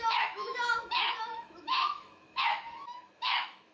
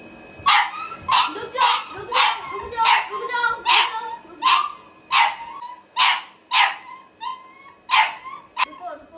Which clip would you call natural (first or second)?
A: second